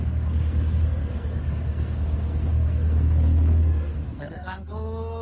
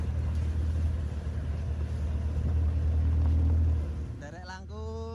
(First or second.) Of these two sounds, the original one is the second